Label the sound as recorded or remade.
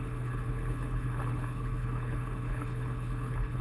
remade